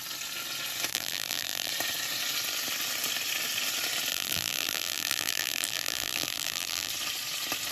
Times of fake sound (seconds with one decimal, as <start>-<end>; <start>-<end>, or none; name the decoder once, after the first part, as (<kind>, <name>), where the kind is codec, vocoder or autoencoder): 0.9-1.7 (vocoder, BigVGAN v2); 4.1-6.9